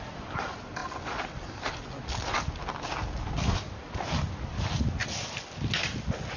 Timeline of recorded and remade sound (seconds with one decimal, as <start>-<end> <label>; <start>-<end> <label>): 0.0-6.4 recorded